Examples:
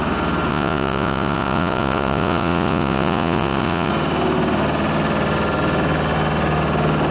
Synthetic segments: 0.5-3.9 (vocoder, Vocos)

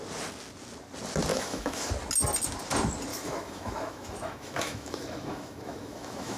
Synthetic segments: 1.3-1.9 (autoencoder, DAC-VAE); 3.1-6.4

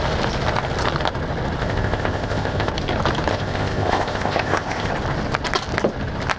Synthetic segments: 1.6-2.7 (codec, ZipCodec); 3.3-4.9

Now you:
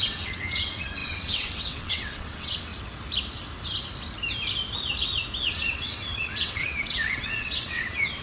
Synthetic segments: 0.0-2.7 (vocoder, WaveNeXt); 5.4-8.2

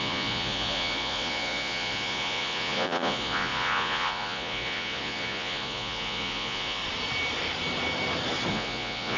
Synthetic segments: 0.0-6.8 (vocoder, Vocos); 8.5-9.2

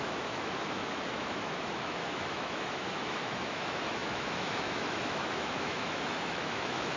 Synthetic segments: 0.0-7.0 (autoencoder, DAC-VAE)